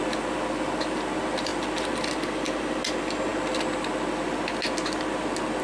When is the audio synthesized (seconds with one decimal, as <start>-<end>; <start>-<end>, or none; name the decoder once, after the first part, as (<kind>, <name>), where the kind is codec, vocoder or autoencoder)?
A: none